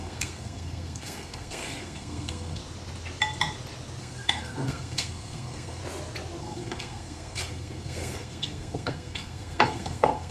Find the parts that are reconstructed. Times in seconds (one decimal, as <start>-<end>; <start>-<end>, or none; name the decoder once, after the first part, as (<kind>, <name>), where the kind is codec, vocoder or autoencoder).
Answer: 0.0-2.6 (codec, SNAC); 4.0-5.8; 6.4-10.3